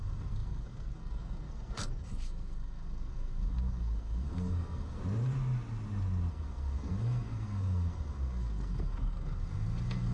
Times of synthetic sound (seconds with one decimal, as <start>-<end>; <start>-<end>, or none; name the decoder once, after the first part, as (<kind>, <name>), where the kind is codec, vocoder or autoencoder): 0.0-5.0 (codec, SNAC); 6.3-10.1